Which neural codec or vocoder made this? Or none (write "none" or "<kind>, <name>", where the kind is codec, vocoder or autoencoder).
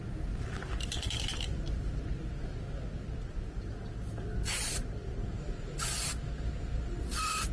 none